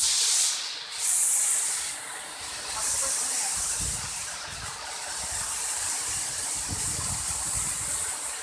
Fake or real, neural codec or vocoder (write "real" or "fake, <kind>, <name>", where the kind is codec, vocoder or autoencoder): real